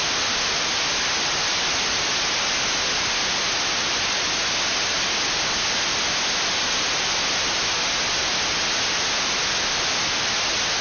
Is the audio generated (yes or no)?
no